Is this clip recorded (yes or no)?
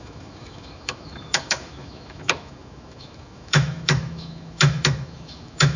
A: no